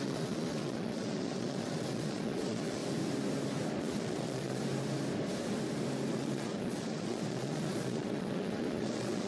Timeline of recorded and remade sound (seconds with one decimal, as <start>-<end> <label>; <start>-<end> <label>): 0.0-2.8 remade; 2.8-3.8 recorded; 3.8-4.6 remade; 4.6-6.1 recorded; 6.1-9.3 remade